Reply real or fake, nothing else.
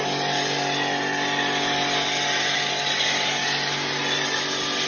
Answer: real